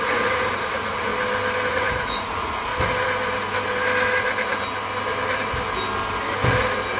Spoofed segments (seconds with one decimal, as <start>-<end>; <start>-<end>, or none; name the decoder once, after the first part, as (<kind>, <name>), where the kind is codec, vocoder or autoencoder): 0.0-1.1 (vocoder, Vocos); 1.7-2.7